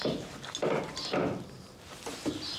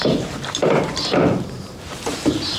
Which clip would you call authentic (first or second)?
first